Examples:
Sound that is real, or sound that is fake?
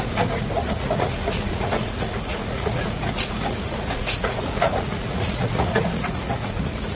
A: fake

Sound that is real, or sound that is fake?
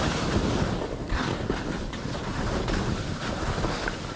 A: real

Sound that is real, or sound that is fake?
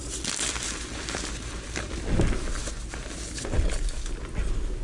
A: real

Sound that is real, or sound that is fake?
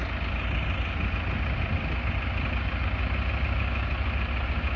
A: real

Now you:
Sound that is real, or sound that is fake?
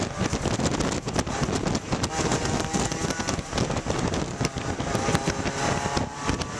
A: real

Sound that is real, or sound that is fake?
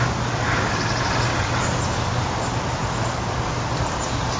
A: real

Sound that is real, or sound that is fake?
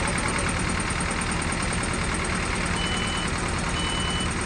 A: real